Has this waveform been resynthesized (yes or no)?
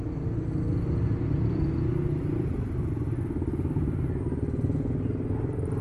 no